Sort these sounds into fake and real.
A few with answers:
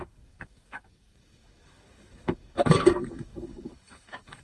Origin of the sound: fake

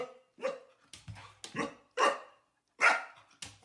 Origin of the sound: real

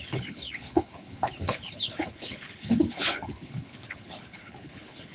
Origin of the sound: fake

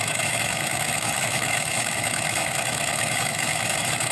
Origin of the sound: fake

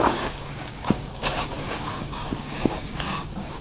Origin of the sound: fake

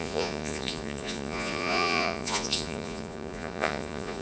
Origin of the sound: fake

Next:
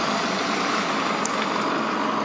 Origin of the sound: real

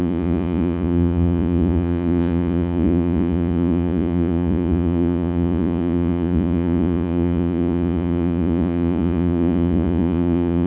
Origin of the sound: fake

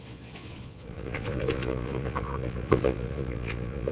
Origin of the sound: fake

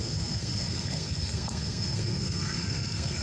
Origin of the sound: fake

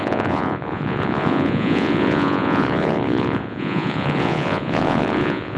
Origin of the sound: fake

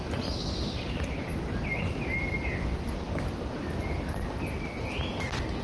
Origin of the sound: real